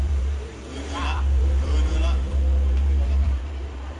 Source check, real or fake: fake